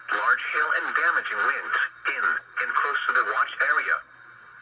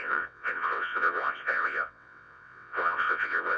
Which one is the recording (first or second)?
first